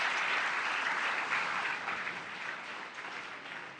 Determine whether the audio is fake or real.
real